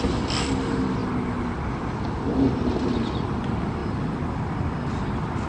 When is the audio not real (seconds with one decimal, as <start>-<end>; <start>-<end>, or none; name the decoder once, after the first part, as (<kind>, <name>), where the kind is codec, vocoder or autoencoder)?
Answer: none